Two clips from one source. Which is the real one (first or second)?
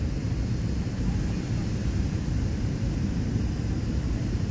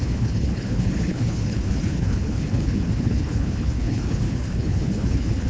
first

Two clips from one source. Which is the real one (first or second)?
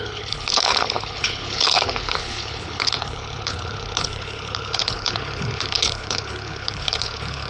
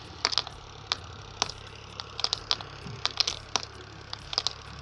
second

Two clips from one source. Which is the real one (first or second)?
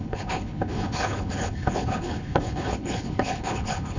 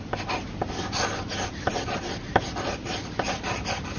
second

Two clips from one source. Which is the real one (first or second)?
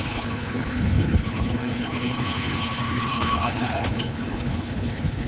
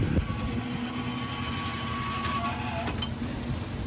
second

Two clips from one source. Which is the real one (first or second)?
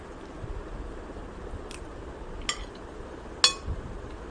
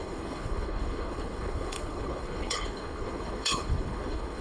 first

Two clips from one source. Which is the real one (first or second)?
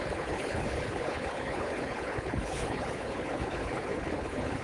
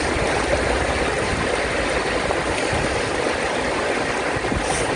second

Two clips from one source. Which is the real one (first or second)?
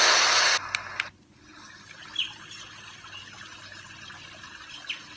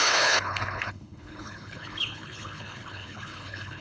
first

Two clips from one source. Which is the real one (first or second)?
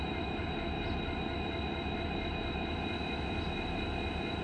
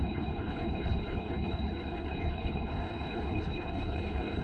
first